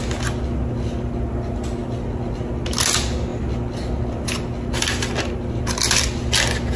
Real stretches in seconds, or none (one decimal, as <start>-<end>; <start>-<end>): 0.0-6.8